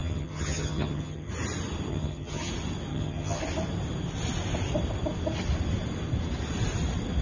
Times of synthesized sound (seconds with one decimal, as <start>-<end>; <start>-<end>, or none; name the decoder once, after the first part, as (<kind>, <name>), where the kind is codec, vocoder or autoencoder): 0.0-1.3 (vocoder, HiFi-GAN); 1.9-2.5; 2.9-3.4